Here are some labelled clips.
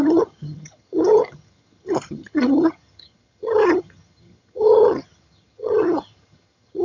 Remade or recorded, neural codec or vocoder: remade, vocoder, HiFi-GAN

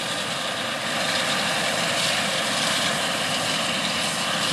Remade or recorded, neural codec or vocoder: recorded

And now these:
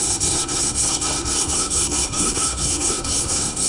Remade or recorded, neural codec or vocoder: remade, codec, SNAC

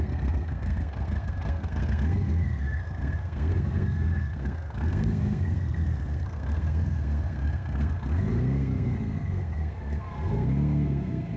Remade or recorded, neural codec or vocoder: remade, codec, SNAC